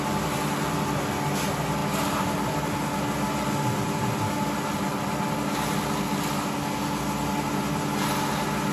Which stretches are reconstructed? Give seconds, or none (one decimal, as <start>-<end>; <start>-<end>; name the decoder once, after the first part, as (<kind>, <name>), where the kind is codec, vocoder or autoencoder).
none